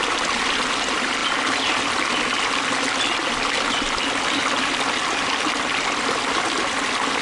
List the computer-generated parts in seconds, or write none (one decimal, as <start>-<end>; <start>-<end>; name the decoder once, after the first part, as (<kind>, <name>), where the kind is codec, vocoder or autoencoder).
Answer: none